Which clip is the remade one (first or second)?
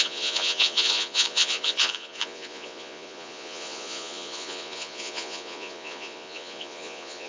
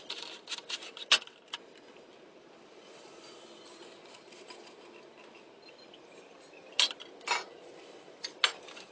first